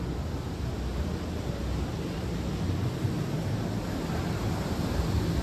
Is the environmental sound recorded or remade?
recorded